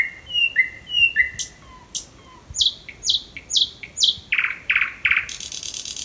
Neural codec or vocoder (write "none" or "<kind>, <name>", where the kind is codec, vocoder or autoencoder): none